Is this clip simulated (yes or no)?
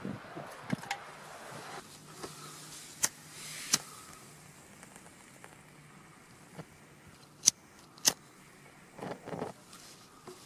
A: no